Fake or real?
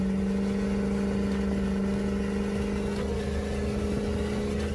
real